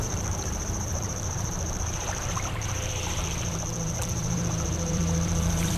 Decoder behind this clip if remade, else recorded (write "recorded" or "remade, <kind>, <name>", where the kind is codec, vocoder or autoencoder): remade, vocoder, BigVGAN v2